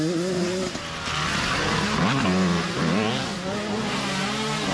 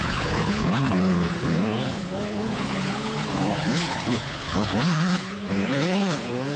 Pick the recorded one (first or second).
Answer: first